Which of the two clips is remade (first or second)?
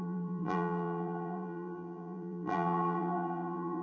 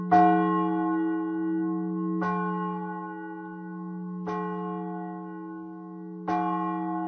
first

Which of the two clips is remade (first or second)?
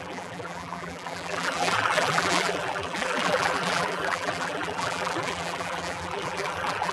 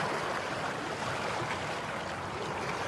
first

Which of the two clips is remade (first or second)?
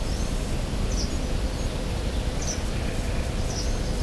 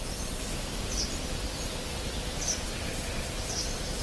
second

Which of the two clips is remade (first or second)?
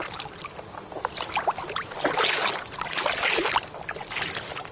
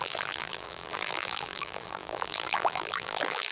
second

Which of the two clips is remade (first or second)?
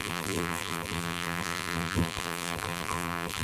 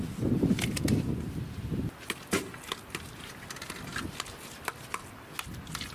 first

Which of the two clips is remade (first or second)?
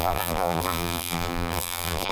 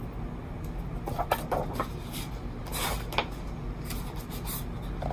first